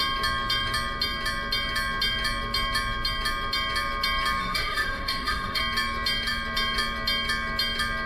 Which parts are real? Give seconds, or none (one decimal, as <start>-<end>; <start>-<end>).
0.0-4.4; 5.6-8.1